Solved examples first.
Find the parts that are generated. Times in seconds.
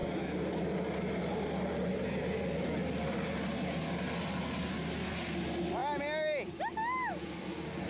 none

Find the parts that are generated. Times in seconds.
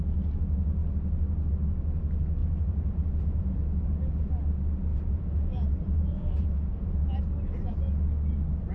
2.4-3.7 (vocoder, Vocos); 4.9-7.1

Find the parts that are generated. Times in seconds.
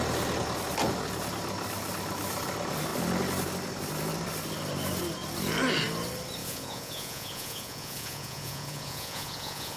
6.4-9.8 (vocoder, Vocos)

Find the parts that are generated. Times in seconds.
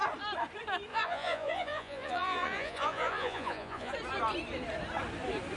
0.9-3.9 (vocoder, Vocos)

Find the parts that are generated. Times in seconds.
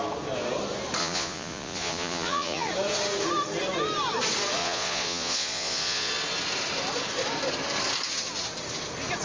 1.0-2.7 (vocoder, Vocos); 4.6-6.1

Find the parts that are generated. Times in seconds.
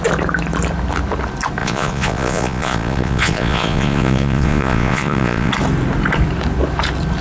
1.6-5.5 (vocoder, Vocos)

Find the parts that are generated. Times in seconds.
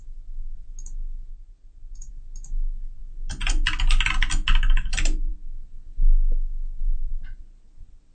0.0-0.7 (vocoder, Vocos); 1.3-2.1; 6.8-7.4